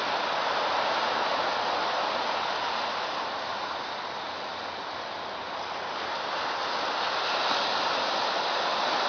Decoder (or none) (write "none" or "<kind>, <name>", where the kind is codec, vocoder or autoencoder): none